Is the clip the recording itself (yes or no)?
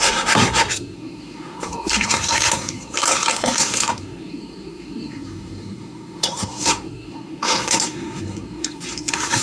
no